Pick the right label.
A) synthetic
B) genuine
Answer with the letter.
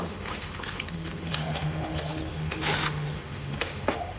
A